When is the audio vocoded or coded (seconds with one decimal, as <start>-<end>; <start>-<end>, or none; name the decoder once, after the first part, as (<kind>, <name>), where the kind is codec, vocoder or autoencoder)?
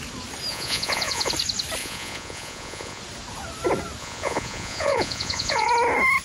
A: 0.5-1.3 (vocoder, Vocos); 1.8-3.0; 4.0-5.7